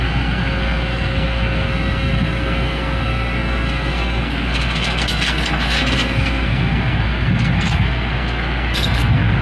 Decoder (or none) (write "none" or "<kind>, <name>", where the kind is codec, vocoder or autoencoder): codec, SNAC